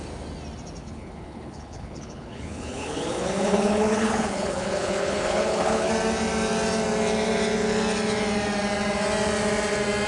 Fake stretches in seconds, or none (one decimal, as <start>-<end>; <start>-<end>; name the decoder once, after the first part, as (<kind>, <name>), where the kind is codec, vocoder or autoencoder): 0.8-5.9 (codec, HILCodec)